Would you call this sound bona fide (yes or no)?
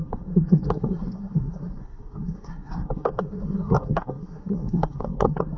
no